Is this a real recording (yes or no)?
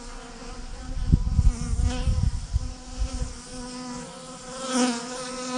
yes